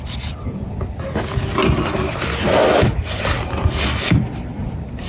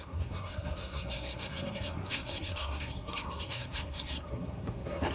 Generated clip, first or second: second